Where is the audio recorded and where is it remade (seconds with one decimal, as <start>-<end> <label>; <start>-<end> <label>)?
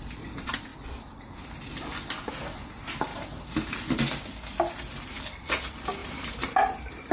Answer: 0.0-3.1 recorded; 3.1-3.8 remade; 3.8-6.0 recorded; 6.0-7.1 remade